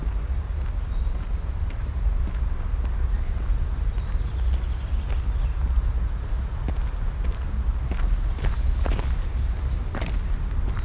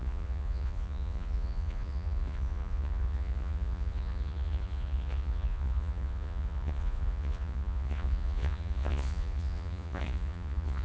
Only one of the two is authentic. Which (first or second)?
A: first